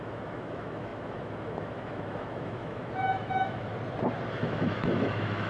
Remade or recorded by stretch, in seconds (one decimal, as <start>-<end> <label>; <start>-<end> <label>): 0.0-3.7 remade; 3.7-4.3 recorded; 4.3-5.5 remade